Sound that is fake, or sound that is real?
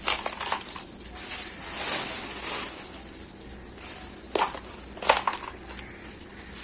real